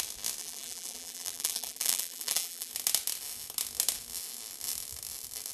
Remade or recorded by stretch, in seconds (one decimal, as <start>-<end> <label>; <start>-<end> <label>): 0.0-0.4 recorded; 0.4-2.7 remade; 2.7-5.5 recorded